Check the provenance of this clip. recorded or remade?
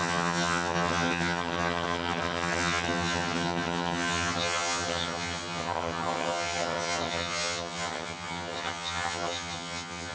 remade